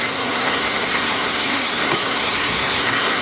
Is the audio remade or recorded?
remade